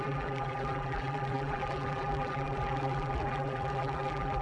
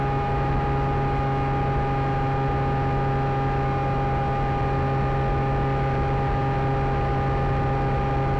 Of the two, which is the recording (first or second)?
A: second